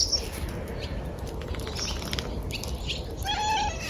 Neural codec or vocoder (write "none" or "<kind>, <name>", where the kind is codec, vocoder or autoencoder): none